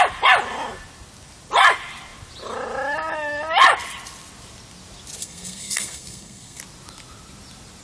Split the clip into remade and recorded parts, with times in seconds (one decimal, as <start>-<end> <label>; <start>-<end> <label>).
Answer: 0.0-5.2 recorded; 5.2-6.6 remade; 6.6-7.8 recorded